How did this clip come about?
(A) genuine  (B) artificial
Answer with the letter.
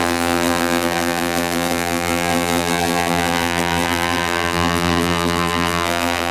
B